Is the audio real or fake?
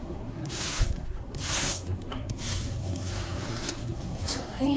fake